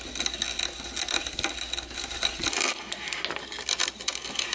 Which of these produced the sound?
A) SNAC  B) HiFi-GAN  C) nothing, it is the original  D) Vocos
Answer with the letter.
C